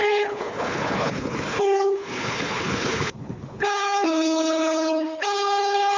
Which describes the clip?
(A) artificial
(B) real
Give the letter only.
A